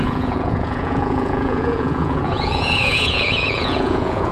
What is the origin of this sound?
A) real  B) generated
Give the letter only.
B